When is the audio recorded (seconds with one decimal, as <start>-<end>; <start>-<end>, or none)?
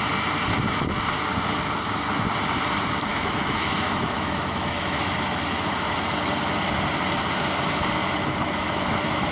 0.0-3.1; 6.4-8.0